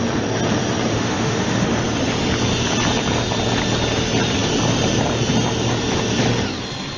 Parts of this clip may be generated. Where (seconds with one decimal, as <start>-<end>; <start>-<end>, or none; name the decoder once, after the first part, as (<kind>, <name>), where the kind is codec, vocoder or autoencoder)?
0.9-1.7 (autoencoder, DAC-VAE)